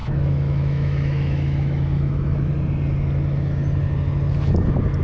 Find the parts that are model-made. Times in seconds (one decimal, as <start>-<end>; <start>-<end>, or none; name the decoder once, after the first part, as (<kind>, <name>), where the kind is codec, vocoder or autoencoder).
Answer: 0.0-2.5 (autoencoder, DAC-VAE)